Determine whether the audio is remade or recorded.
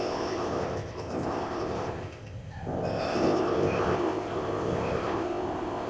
remade